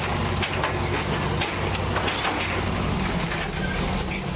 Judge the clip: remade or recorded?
recorded